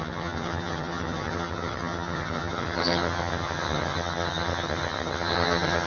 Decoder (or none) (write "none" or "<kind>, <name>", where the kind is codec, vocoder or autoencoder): vocoder, HiFi-GAN